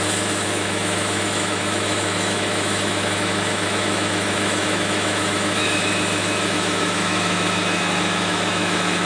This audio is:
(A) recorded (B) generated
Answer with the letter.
B